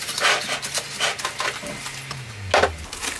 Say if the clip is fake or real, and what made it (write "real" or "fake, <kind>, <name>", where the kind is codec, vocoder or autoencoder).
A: real